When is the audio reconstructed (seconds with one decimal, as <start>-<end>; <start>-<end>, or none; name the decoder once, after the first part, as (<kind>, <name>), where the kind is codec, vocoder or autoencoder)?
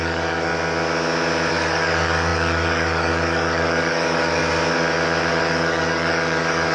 0.0-0.5 (codec, DAC); 1.5-4.4; 5.3-6.7